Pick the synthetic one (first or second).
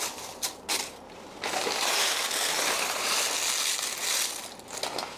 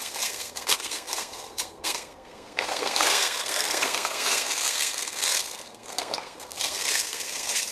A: second